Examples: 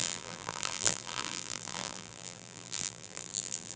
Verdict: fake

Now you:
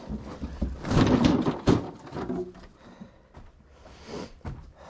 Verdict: real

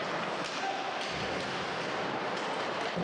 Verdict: real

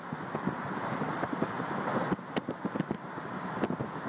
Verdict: real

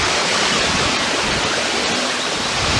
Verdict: real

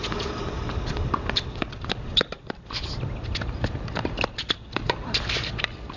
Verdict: fake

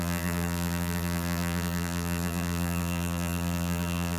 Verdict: fake